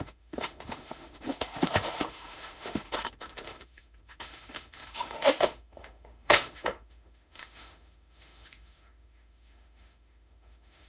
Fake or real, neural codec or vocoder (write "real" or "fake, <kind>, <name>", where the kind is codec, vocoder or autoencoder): fake, autoencoder, DAC-VAE